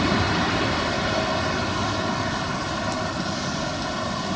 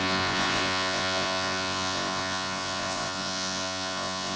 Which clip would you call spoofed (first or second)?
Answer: second